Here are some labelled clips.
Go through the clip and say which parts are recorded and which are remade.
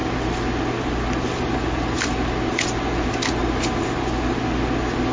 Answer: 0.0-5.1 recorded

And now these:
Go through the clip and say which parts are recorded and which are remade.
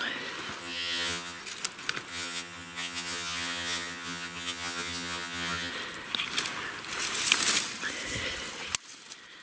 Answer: 0.0-0.6 recorded; 0.6-1.4 remade; 1.4-2.1 recorded; 2.1-5.7 remade; 5.7-9.4 recorded